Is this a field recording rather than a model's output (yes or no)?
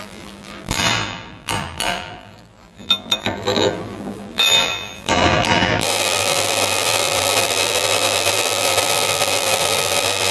no